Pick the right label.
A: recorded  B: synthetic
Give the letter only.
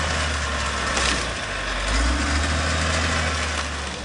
A